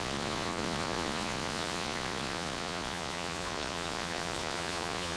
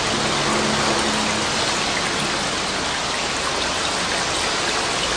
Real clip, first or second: second